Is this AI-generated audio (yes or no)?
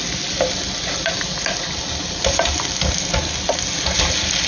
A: no